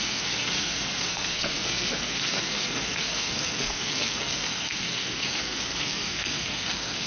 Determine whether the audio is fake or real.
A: fake